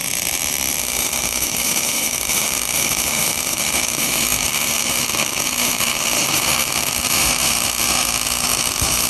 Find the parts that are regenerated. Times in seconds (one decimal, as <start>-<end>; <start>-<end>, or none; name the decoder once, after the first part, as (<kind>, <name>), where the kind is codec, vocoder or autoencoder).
0.8-9.1 (autoencoder, DAC-VAE)